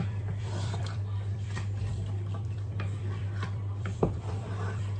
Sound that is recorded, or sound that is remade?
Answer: remade